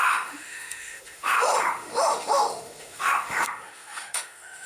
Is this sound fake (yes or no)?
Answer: yes